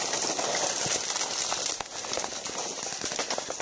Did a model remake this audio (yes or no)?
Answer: no